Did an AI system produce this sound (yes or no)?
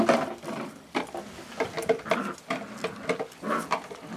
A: no